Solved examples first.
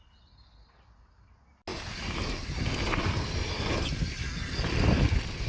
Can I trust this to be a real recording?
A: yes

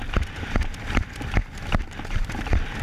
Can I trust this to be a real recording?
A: yes